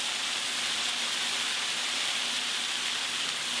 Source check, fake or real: fake